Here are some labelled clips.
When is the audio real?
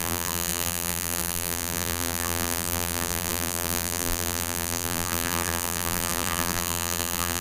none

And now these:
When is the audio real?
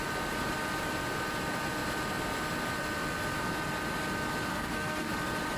0.0-4.5; 5.1-5.6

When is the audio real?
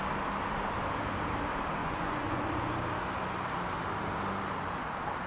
0.0-1.8; 2.4-5.3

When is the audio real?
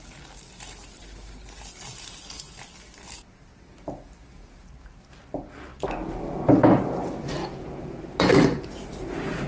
0.0-7.4; 8.0-9.5